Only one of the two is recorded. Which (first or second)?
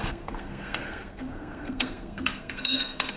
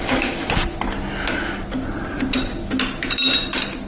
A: second